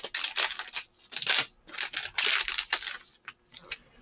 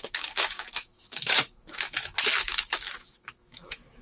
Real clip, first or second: first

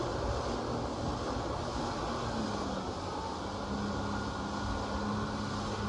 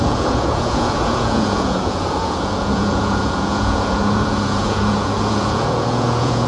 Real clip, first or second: first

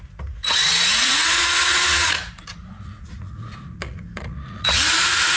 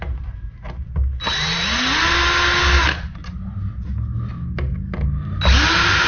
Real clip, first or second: second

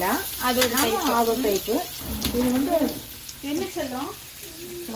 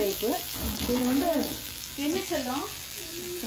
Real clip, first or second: first